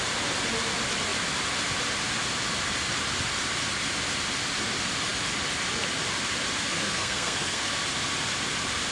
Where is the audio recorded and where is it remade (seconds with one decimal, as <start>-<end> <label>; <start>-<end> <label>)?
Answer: 0.0-6.8 recorded; 6.8-7.7 remade; 7.7-8.9 recorded